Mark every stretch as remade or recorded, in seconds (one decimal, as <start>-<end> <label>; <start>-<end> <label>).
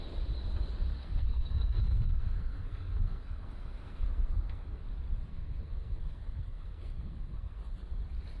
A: 0.0-1.0 recorded; 1.0-4.8 remade; 4.8-5.3 recorded; 5.3-8.0 remade; 8.0-8.4 recorded